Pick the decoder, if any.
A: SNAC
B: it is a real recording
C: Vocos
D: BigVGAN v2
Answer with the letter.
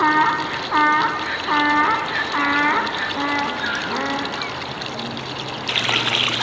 B